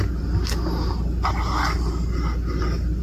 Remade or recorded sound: recorded